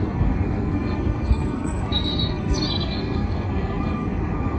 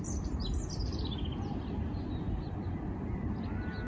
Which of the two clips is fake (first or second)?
first